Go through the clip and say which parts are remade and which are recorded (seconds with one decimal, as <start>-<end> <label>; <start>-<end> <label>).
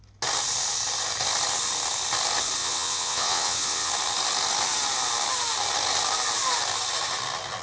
0.0-2.6 recorded; 2.6-3.9 remade; 3.9-7.6 recorded